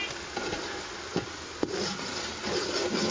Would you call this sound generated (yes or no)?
no